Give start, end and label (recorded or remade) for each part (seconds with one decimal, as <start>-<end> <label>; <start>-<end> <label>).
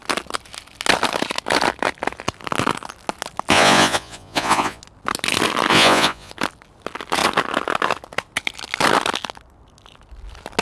0.0-3.5 recorded; 3.5-4.8 remade; 4.8-5.7 recorded; 5.7-6.3 remade; 6.3-10.6 recorded